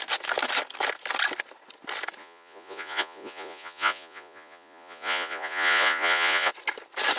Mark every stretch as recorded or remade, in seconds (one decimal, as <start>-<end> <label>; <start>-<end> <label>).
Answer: 0.0-2.2 recorded; 2.2-6.5 remade; 6.5-7.2 recorded